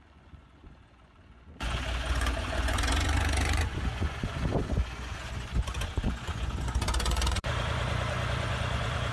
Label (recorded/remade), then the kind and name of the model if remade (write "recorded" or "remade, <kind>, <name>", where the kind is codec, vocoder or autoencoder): remade, vocoder, Vocos